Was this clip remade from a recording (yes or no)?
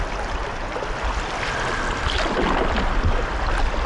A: no